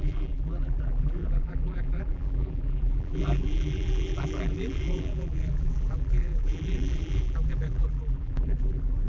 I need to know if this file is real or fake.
fake